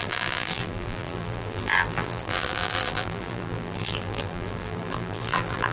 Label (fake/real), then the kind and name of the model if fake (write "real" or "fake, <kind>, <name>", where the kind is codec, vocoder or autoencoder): fake, vocoder, BigVGAN v2